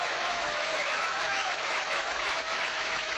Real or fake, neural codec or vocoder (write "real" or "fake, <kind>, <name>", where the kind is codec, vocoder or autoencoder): fake, autoencoder, DAC-VAE